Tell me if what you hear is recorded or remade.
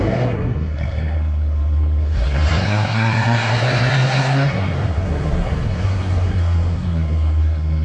remade